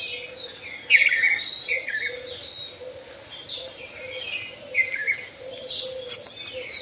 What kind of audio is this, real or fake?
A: real